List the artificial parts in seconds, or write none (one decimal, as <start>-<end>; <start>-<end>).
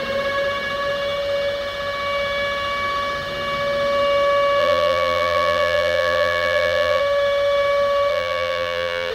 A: 4.6-7.0; 8.1-9.1